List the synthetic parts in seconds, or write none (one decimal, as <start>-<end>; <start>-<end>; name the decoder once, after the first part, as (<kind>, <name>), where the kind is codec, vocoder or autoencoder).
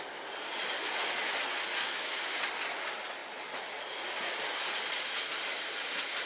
1.8-2.4 (codec, DAC)